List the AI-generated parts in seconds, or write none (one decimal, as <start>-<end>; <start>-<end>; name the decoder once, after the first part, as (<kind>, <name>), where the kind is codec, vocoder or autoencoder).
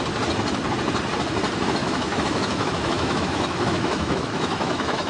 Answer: 1.8-5.1 (autoencoder, DAC-VAE)